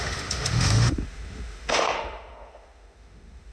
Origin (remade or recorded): remade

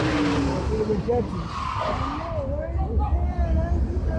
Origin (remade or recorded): recorded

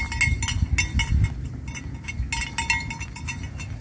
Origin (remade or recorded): recorded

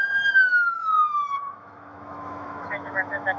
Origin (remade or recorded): remade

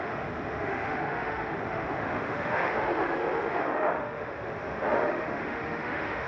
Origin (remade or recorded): remade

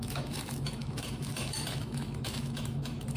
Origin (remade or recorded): remade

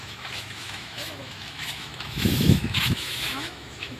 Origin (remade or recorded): remade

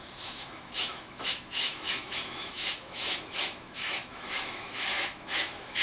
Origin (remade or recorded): remade